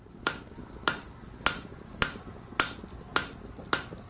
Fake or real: real